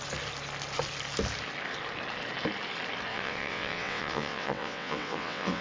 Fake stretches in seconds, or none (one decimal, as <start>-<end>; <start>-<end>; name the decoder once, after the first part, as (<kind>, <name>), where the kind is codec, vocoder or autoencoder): 3.1-5.6 (vocoder, WaveNeXt)